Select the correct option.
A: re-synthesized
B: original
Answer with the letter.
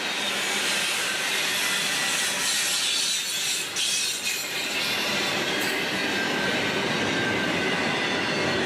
B